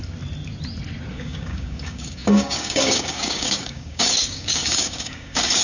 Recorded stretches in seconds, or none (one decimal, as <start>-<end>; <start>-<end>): 0.0-1.1